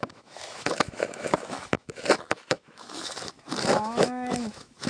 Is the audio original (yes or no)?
no